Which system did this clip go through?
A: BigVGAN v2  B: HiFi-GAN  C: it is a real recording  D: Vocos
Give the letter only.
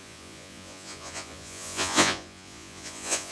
D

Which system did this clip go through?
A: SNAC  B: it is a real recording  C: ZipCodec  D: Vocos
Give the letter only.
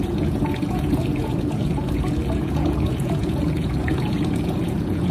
D